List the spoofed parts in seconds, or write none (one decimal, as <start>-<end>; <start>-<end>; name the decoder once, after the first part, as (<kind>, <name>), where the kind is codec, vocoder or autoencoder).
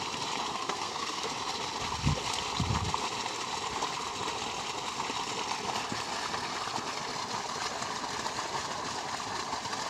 0.5-1.3 (codec, SNAC)